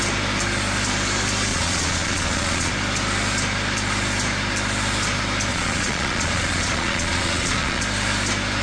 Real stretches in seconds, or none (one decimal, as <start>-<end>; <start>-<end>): 0.0-1.5; 2.7-5.5; 7.8-8.6